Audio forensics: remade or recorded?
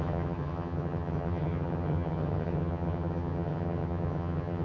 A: remade